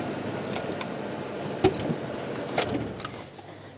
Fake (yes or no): no